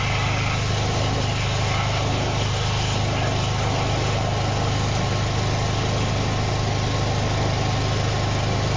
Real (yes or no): yes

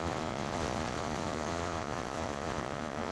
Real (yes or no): no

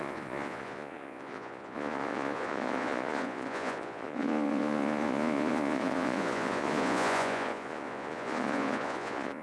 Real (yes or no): no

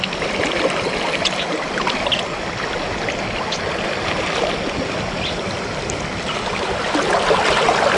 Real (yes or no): yes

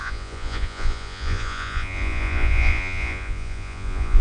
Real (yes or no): no